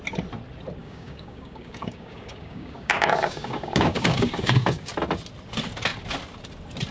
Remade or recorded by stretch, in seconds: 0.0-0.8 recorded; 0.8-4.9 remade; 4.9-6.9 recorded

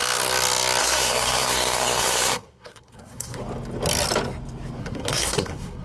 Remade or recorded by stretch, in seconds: 0.0-0.8 recorded; 0.8-3.4 remade; 3.4-4.8 recorded; 4.8-5.8 remade

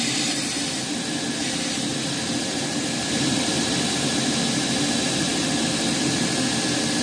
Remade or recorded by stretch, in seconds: 0.0-1.9 recorded; 1.9-3.7 remade; 3.7-7.0 recorded

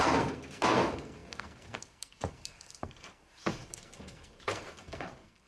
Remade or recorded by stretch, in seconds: 0.0-5.5 remade

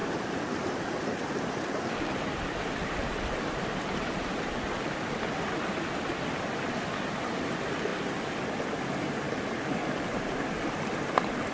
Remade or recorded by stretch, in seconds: 0.0-5.2 remade; 5.2-11.5 recorded

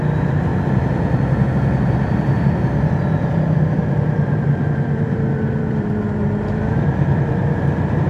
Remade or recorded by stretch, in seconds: 0.0-8.1 remade

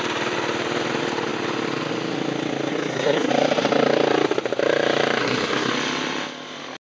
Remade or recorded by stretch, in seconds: 0.0-2.7 recorded; 2.7-3.3 remade; 3.3-5.2 recorded; 5.2-5.7 remade; 5.7-6.9 recorded

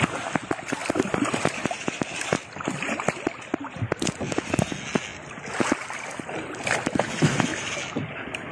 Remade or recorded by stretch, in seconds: 0.0-0.8 recorded; 0.8-4.5 remade; 4.5-7.5 recorded; 7.5-8.5 remade